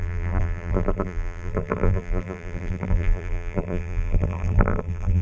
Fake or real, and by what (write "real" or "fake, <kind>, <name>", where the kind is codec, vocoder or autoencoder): fake, vocoder, BigVGAN v2